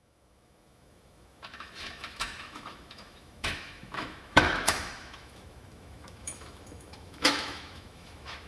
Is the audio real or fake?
fake